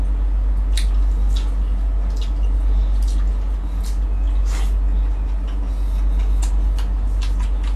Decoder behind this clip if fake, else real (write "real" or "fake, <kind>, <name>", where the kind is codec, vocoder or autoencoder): real